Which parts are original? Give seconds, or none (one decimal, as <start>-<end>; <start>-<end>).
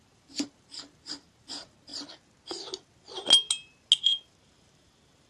1.9-4.0